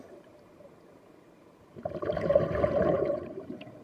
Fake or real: fake